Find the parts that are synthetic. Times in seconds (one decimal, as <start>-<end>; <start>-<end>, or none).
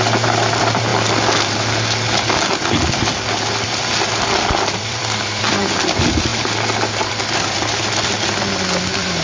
0.0-0.9; 4.8-6.3; 7.0-9.2